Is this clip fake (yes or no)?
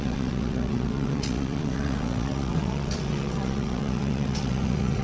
yes